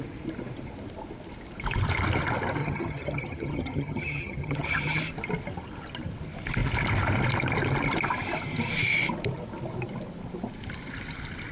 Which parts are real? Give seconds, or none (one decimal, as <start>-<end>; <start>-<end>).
0.0-2.6; 5.0-11.5